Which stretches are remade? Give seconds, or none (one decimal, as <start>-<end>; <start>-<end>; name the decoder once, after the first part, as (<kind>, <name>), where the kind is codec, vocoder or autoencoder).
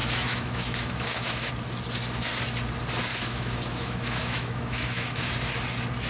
0.0-1.5 (autoencoder, DAC-VAE); 3.1-5.3